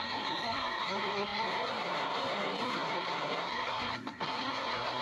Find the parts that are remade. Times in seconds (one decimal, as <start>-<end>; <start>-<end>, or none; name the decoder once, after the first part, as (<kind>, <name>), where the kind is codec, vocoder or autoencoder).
0.0-5.0 (codec, SNAC)